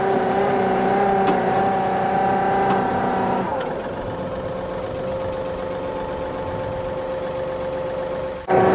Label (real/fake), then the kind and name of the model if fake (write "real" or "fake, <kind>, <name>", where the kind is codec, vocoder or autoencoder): real